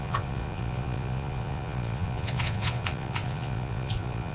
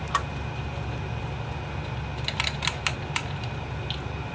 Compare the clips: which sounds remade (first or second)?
first